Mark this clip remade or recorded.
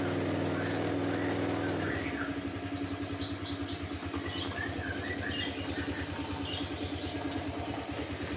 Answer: recorded